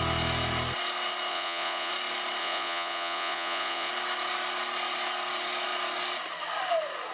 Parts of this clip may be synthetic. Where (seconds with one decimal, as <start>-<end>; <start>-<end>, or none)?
1.3-1.9; 2.4-3.9